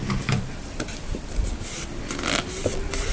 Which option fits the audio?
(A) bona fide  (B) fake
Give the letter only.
B